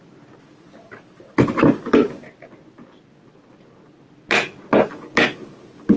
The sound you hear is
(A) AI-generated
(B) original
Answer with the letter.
B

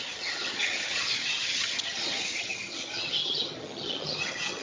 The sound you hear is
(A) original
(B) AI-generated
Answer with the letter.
B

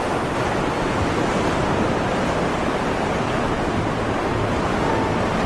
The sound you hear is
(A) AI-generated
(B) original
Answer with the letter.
B